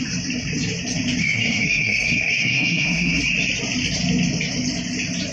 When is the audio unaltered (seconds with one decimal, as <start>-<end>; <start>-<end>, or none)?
0.0-1.2; 3.2-5.3